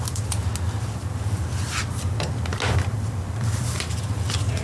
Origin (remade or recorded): recorded